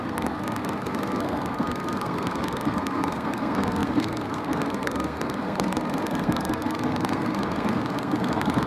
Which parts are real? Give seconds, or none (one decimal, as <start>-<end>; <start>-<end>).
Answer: none